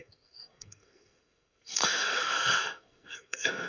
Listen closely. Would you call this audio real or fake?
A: fake